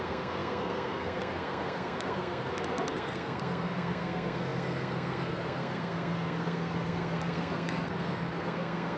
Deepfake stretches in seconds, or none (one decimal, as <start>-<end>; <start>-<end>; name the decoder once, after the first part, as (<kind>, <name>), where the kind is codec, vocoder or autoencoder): 0.0-9.0 (codec, SNAC)